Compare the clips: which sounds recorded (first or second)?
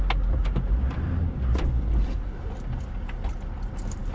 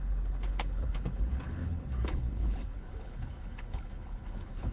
first